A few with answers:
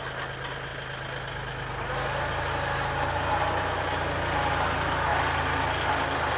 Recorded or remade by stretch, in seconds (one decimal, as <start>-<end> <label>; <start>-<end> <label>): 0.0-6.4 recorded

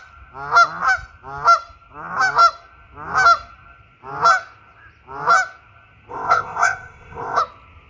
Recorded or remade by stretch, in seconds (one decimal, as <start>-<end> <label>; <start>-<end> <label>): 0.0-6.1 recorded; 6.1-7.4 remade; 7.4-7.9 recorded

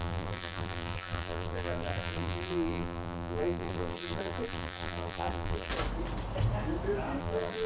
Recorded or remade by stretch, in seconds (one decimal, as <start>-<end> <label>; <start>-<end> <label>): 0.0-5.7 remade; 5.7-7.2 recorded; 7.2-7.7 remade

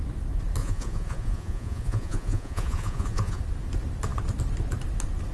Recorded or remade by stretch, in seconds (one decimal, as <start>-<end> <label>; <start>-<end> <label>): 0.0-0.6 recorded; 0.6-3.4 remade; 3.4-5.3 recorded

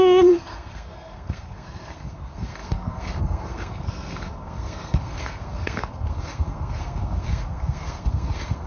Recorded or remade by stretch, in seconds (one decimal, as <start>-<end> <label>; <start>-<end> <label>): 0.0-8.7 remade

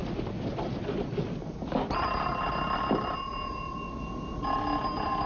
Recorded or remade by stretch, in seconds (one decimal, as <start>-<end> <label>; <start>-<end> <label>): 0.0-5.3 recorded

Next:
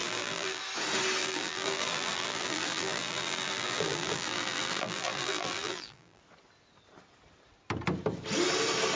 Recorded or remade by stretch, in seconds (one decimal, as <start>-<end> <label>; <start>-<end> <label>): 0.0-0.6 remade; 0.6-1.2 recorded; 1.2-6.2 remade; 6.2-9.0 recorded